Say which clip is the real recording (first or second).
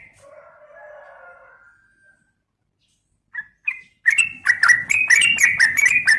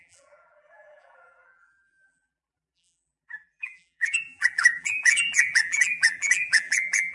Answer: first